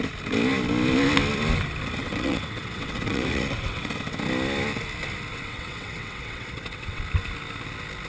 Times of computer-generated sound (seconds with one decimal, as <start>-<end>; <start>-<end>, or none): 2.0-3.9; 5.3-7.0

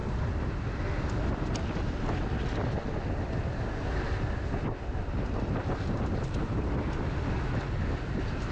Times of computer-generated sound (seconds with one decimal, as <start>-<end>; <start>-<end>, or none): none

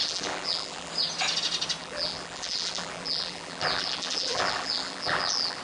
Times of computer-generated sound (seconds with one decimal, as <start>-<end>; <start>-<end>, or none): 0.0-0.9; 1.8-5.6

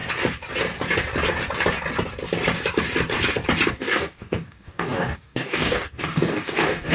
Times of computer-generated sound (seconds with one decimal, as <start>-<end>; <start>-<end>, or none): 3.7-6.9